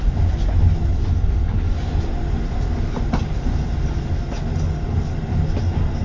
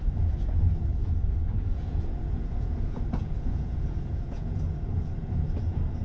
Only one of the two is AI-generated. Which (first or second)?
second